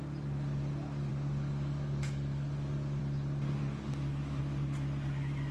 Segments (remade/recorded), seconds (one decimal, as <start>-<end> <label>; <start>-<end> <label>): 0.0-1.1 recorded; 1.1-3.0 remade; 3.0-3.6 recorded; 3.6-4.4 remade; 4.4-5.5 recorded

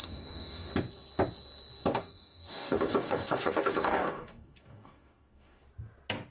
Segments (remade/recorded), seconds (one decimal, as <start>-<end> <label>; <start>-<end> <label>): 0.0-0.7 remade; 0.7-1.9 recorded; 1.9-5.6 remade; 5.6-6.3 recorded

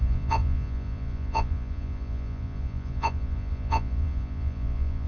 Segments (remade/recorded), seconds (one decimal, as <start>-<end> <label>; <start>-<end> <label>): 0.0-5.1 remade

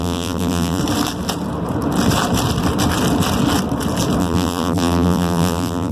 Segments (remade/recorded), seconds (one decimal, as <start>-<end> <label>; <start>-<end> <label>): 0.0-0.8 remade; 0.8-4.2 recorded; 4.2-5.9 remade

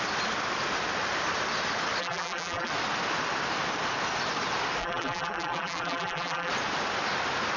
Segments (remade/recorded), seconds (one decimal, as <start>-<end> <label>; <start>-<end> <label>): 0.0-2.0 recorded; 2.0-2.7 remade; 2.7-4.8 recorded; 4.8-6.5 remade; 6.5-7.6 recorded

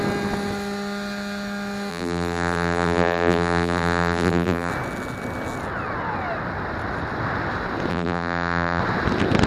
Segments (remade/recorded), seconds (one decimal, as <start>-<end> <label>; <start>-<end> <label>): 0.0-1.9 recorded; 1.9-4.7 remade; 4.7-7.9 recorded; 7.9-8.8 remade; 8.8-9.5 recorded

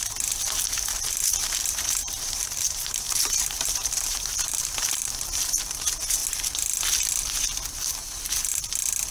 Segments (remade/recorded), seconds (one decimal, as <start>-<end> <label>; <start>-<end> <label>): 0.0-2.0 recorded; 2.0-5.2 remade; 5.2-9.1 recorded